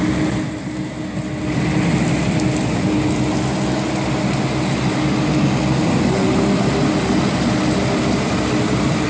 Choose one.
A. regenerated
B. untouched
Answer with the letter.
B